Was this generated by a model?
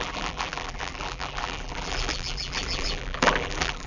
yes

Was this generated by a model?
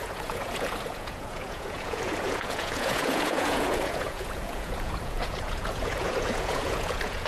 yes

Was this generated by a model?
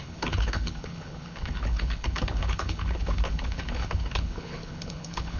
yes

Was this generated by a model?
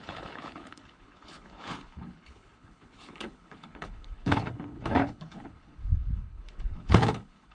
yes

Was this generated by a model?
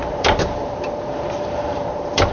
yes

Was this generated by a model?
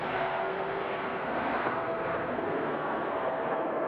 yes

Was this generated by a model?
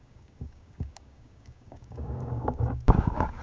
yes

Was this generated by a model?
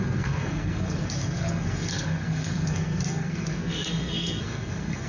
yes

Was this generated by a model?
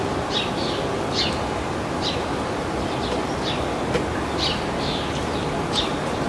no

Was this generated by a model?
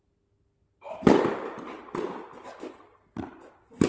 no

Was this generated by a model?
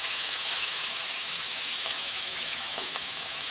yes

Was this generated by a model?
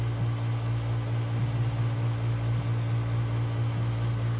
no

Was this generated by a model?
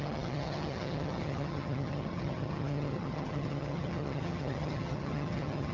yes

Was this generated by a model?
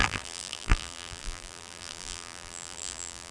yes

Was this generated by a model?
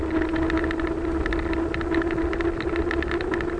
no